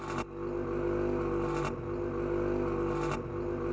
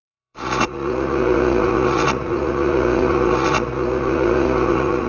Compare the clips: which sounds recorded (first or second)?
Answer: first